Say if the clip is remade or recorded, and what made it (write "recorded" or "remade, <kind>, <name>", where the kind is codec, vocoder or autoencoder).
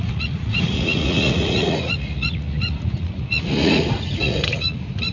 remade, vocoder, Vocos